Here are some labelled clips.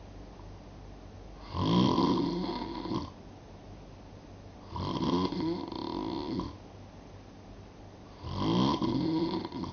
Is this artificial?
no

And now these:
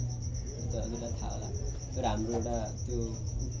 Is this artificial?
no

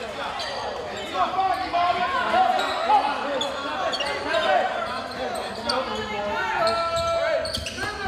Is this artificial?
no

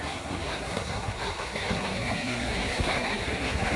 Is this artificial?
yes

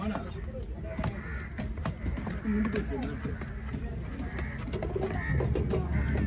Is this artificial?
no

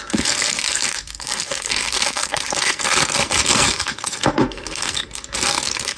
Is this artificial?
yes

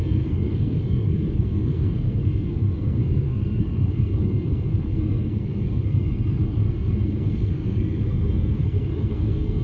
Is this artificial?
yes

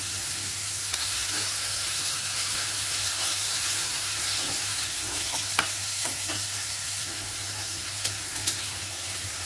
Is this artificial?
yes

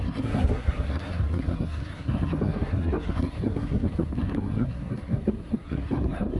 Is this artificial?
yes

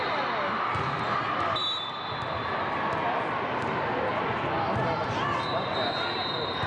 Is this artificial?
no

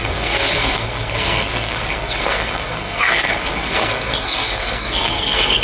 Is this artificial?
yes